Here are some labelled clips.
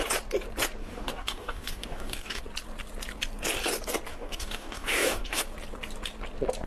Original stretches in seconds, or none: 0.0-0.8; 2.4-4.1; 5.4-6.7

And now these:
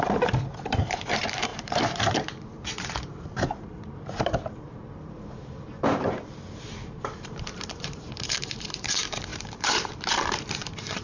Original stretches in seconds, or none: none

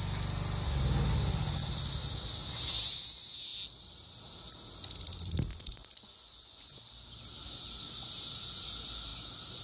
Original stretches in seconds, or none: 0.0-5.5; 6.8-9.6